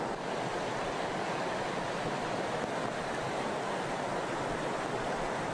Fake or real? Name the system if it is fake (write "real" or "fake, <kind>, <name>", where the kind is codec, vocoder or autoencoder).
real